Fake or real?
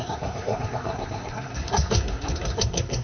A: fake